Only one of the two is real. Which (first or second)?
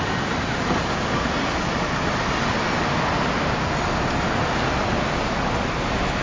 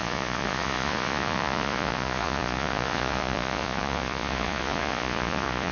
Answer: first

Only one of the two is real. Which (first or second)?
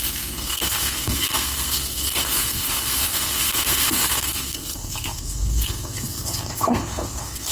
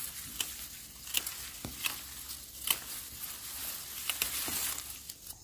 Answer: second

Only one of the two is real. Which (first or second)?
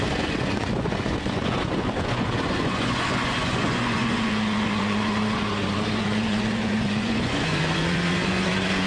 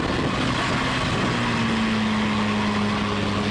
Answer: second